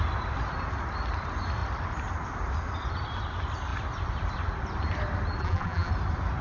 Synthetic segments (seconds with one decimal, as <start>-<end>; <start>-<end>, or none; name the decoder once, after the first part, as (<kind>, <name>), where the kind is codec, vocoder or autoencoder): 5.4-5.9 (vocoder, BigVGAN v2)